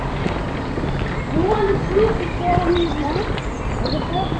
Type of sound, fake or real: real